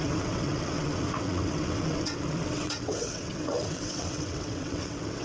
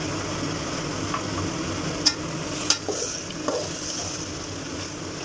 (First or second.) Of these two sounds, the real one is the second